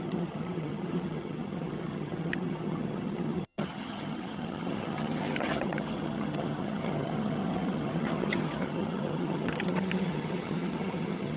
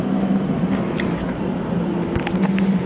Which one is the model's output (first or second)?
first